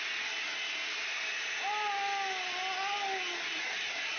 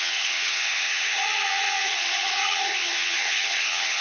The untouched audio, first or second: first